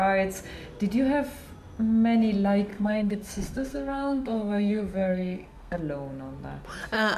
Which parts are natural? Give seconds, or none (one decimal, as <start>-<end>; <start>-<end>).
0.0-2.7; 5.8-7.2